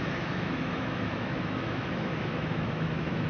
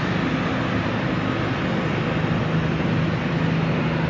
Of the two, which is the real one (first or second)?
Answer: second